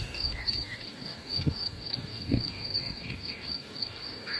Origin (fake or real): fake